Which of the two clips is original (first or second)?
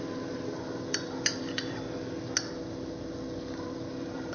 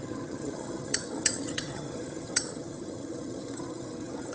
first